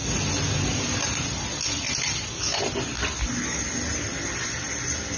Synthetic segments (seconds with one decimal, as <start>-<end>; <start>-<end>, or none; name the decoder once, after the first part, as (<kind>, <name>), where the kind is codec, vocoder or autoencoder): none